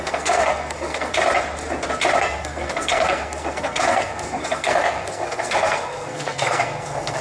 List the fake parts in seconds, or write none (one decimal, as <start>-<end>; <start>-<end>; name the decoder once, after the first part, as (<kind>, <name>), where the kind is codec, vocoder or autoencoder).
0.0-1.1 (codec, SNAC); 2.2-7.2